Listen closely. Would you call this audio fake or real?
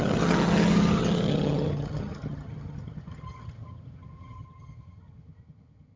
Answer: fake